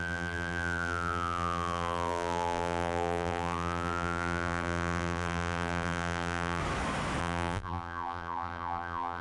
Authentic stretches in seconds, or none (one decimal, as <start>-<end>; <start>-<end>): 6.6-7.2